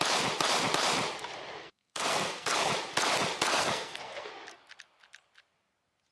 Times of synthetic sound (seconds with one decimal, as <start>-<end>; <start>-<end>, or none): 1.6-2.7; 3.5-4.3

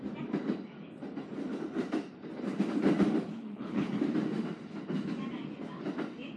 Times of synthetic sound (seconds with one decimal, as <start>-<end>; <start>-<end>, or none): 3.3-4.0

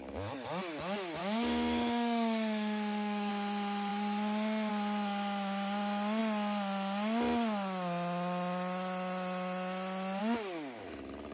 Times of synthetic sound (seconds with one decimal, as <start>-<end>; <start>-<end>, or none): 1.2-3.3

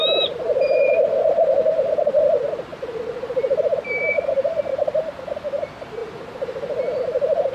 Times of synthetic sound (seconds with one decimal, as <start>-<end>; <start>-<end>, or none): none

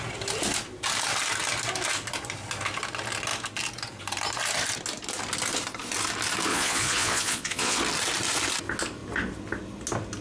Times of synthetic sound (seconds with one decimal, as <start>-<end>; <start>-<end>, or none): 6.5-7.8

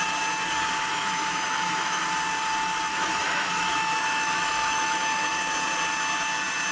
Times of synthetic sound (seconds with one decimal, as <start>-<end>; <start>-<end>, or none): 0.9-2.0; 2.9-5.3

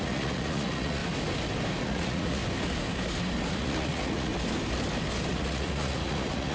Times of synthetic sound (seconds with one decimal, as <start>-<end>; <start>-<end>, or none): 0.0-1.0; 1.8-2.4; 3.5-4.3; 5.3-6.5

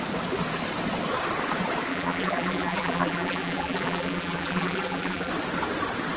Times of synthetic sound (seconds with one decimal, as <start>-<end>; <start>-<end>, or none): 1.9-5.3